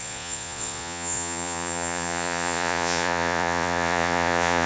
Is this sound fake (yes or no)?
yes